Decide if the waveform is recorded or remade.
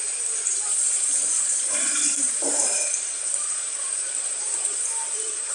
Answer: remade